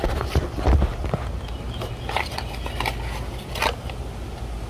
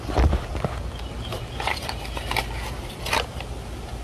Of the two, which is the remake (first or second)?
second